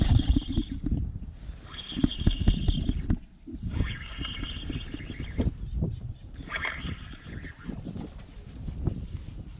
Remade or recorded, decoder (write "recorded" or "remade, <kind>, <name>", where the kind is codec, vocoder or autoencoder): recorded